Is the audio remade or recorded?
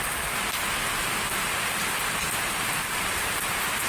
recorded